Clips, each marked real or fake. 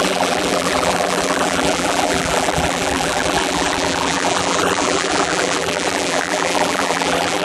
fake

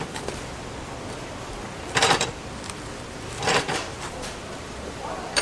fake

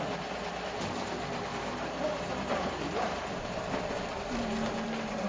fake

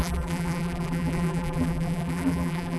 fake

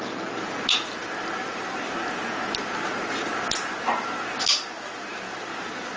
real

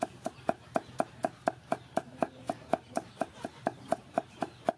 fake